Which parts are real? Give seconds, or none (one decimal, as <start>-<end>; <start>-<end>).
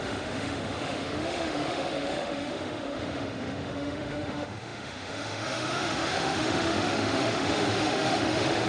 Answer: none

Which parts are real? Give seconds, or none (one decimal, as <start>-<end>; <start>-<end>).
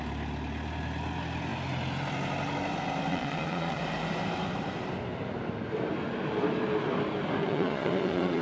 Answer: 0.0-3.1; 3.8-7.4